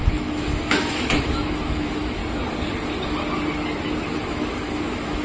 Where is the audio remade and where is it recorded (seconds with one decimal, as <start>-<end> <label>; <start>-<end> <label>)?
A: 0.0-2.2 remade; 2.2-4.3 recorded; 4.3-5.2 remade